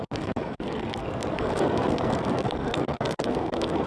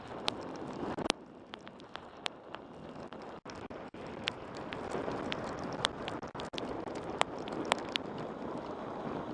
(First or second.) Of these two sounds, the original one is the second